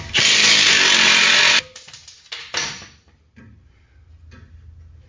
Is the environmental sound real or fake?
real